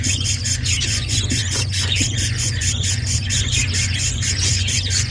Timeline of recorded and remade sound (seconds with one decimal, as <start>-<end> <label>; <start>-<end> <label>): 0.0-5.1 remade